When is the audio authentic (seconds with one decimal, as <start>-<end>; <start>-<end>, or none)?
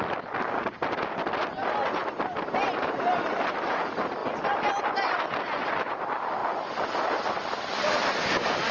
0.0-2.0; 2.9-4.2; 4.8-8.7